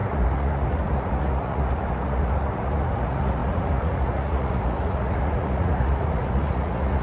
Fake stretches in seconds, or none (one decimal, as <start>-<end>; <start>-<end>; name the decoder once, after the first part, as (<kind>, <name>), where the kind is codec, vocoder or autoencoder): 0.0-7.0 (vocoder, Vocos)